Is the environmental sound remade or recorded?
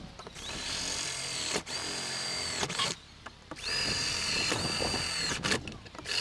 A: remade